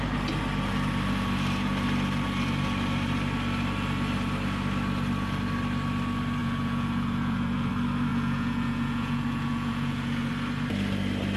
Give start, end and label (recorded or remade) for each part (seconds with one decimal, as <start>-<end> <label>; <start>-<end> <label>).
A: 0.0-6.4 recorded; 6.4-7.7 remade; 7.7-8.1 recorded; 8.1-10.3 remade; 10.3-11.4 recorded